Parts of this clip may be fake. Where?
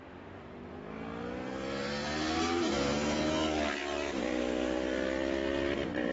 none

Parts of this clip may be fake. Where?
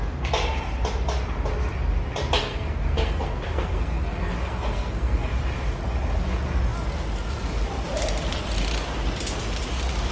2.4-5.3 (codec, SNAC)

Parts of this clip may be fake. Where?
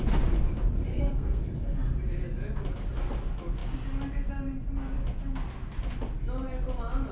0.9-1.4 (codec, SNAC)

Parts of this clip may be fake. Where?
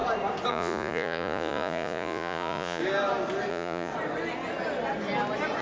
0.5-2.8 (vocoder, Vocos); 3.5-3.9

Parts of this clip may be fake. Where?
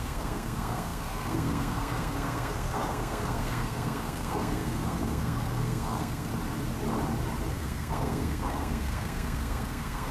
0.0-6.3 (codec, SNAC); 7.5-10.1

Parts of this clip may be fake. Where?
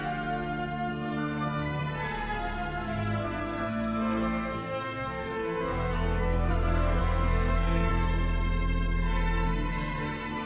0.9-1.8 (codec, SNAC); 3.4-6.5; 7.0-7.9